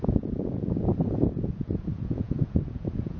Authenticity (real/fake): fake